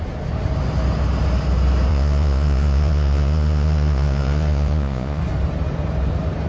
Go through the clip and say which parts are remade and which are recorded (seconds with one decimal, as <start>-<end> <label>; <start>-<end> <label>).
0.0-1.9 recorded; 1.9-5.2 remade; 5.2-6.5 recorded